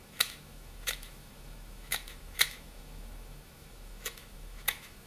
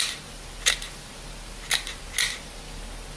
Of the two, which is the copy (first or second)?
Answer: first